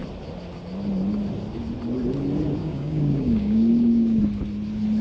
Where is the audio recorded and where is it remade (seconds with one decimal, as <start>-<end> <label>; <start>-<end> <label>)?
0.0-2.6 recorded; 2.6-4.2 remade; 4.2-5.0 recorded